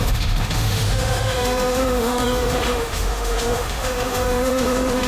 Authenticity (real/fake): fake